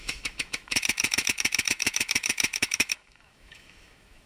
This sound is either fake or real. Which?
fake